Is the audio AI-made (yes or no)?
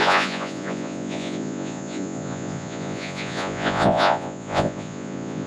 yes